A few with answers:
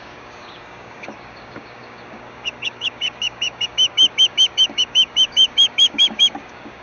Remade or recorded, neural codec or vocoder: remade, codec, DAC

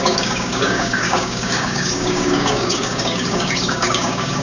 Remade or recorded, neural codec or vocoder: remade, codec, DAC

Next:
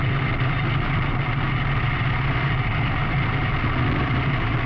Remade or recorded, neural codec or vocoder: recorded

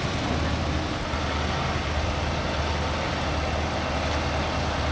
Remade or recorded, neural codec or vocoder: recorded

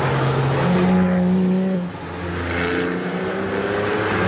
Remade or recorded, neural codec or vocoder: recorded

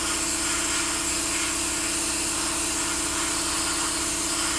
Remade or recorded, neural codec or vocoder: recorded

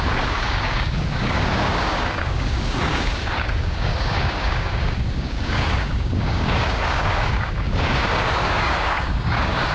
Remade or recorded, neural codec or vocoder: remade, codec, DAC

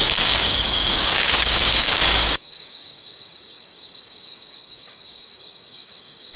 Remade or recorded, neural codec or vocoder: remade, codec, DAC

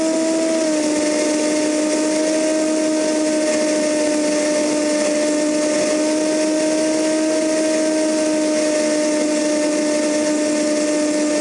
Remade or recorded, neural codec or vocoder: recorded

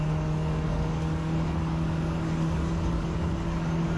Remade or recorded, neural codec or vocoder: remade, codec, DAC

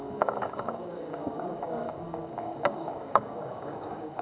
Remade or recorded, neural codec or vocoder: remade, codec, DAC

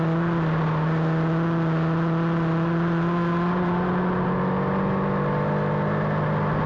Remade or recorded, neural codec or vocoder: recorded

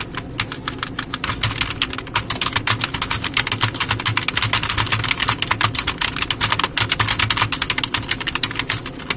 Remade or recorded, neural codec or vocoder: recorded